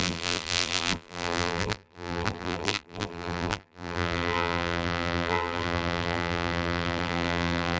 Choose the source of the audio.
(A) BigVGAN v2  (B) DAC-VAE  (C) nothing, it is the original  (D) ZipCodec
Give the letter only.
A